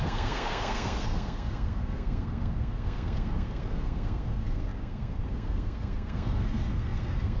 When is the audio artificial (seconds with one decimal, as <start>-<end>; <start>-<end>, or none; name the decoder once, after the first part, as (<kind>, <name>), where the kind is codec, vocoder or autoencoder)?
0.0-7.4 (codec, SNAC)